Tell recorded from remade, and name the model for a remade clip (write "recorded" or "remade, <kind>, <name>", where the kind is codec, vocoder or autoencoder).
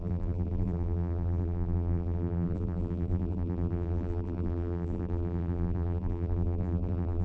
remade, vocoder, BigVGAN v2